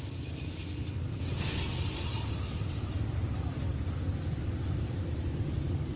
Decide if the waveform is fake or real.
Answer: real